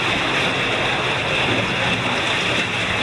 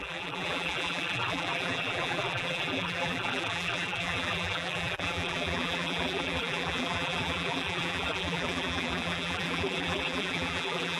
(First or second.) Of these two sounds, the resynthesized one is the second